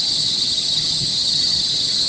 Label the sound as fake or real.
fake